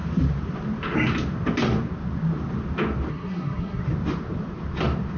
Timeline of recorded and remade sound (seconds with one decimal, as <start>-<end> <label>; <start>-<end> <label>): 0.0-3.1 recorded; 3.1-3.8 remade; 3.8-5.2 recorded